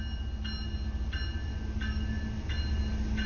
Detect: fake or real real